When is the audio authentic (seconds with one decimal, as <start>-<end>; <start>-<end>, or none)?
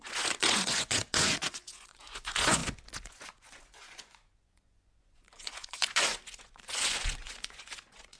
none